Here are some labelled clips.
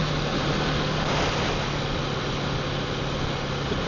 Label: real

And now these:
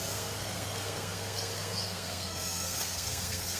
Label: fake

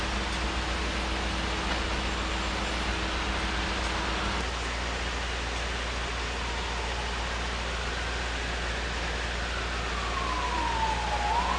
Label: real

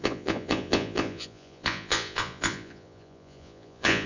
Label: fake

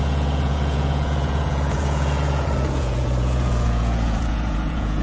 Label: fake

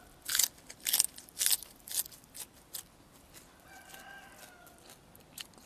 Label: real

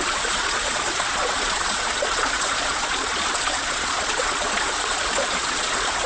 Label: fake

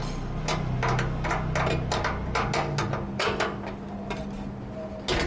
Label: real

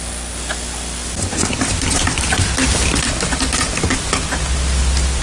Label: real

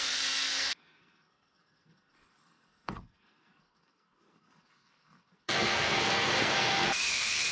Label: fake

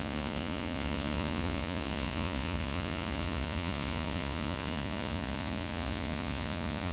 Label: fake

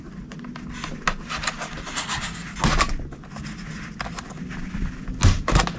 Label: real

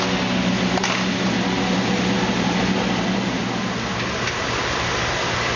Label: real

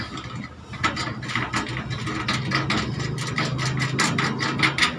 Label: real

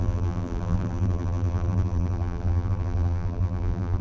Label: fake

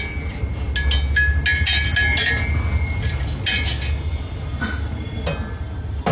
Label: real